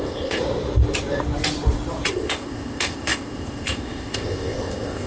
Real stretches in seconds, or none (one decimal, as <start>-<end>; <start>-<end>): 0.4-2.1